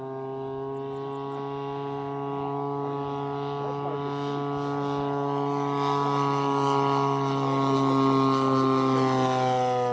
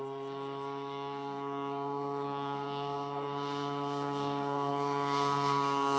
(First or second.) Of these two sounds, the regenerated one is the second